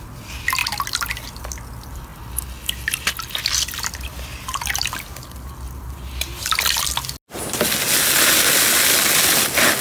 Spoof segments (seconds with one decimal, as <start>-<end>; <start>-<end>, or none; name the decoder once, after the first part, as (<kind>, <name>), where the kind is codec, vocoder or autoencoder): none